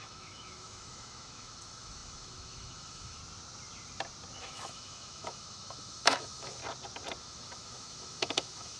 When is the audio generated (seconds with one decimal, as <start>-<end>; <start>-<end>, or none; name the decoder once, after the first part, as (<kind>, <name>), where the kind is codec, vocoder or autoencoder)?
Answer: 0.0-3.2 (autoencoder, DAC-VAE); 4.4-6.6; 7.2-8.8